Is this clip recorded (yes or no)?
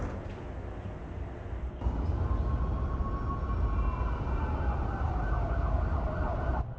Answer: yes